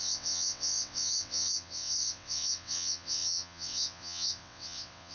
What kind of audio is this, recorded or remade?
remade